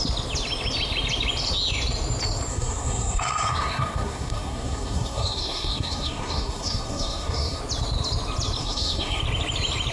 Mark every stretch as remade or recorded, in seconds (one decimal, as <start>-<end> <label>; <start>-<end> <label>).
0.0-2.5 recorded; 2.5-7.6 remade; 7.6-8.6 recorded; 8.6-9.2 remade; 9.2-9.9 recorded